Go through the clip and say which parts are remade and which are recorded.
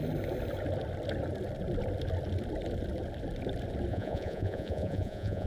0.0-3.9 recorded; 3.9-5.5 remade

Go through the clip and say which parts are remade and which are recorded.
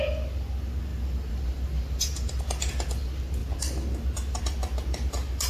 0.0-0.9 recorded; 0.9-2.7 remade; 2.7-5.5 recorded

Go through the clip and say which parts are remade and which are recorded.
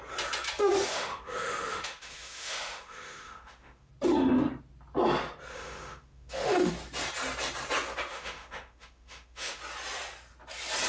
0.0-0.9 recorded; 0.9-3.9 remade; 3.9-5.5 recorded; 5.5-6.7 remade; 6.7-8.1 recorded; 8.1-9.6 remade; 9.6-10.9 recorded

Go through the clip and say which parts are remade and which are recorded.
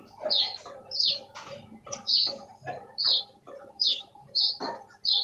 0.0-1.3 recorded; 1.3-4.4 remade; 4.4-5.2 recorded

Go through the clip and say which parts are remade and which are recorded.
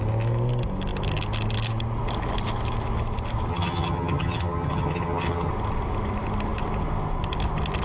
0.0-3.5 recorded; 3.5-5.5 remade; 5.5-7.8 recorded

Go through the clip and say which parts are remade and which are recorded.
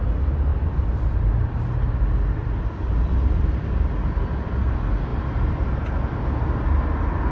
0.0-0.5 recorded; 0.5-1.3 remade; 1.3-2.4 recorded; 2.4-3.9 remade; 3.9-5.1 recorded; 5.1-5.7 remade; 5.7-7.3 recorded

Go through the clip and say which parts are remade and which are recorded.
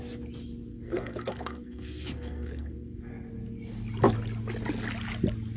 0.0-0.7 recorded; 0.7-3.1 remade; 3.1-5.6 recorded